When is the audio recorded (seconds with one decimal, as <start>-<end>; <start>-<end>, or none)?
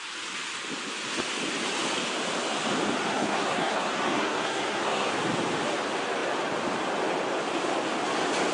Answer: 0.0-3.1; 5.1-8.5